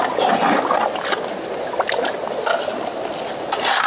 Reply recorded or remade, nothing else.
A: recorded